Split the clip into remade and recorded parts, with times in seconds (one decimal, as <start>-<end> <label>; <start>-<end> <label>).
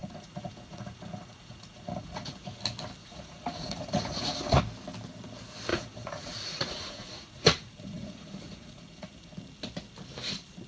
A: 0.0-2.6 remade; 2.6-3.0 recorded; 3.0-4.6 remade; 4.6-5.7 recorded; 5.7-9.3 remade; 9.3-10.7 recorded